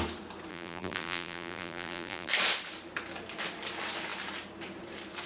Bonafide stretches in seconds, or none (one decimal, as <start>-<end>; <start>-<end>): 0.0-0.5; 2.3-5.3